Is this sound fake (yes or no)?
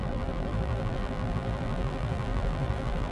yes